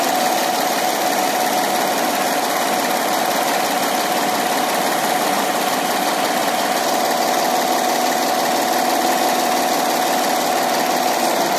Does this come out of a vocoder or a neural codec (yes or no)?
no